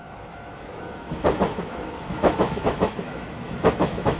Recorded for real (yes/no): no